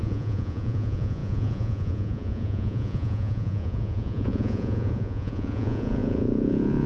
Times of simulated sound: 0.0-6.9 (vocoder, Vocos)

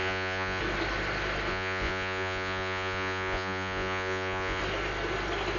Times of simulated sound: 0.0-0.6 (vocoder, Vocos); 1.5-4.6

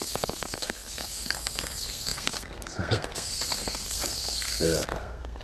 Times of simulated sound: 0.0-5.4 (codec, SNAC)

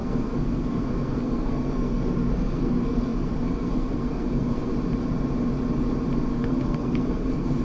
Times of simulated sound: 0.0-4.7 (codec, SNAC); 6.3-7.6